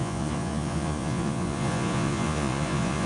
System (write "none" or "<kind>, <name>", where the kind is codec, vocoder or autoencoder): vocoder, Vocos